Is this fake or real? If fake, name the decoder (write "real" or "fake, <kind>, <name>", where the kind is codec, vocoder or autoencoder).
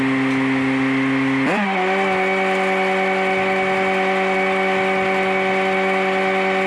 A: real